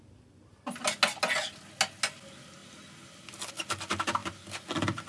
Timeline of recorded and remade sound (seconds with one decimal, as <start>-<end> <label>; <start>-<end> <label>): 0.0-5.1 recorded